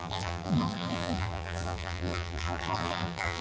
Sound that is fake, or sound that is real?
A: fake